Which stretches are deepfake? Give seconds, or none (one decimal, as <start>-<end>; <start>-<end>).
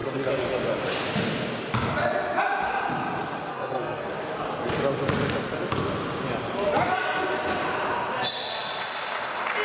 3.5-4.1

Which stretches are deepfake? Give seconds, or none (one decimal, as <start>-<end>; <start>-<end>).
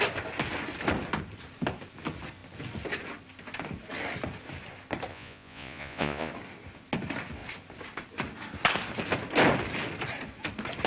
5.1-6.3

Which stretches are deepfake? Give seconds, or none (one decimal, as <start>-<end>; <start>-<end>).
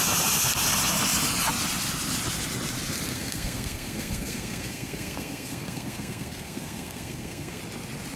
3.1-7.6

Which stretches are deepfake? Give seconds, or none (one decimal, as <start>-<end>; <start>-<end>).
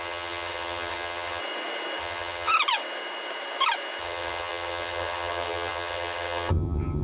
0.0-1.4; 2.0-2.5; 4.0-7.0